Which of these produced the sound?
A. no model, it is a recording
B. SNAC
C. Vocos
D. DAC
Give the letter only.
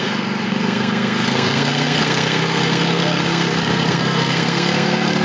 B